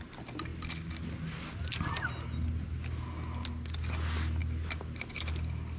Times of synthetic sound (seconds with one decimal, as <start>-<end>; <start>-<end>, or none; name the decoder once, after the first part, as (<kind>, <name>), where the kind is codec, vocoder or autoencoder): none